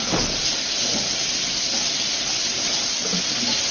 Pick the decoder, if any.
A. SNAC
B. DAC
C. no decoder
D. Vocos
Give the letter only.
C